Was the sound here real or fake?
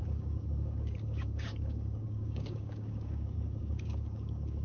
fake